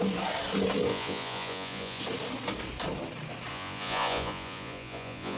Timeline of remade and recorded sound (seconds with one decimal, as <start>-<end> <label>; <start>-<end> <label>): 0.0-0.9 recorded; 0.9-2.0 remade; 2.0-3.5 recorded; 3.5-5.4 remade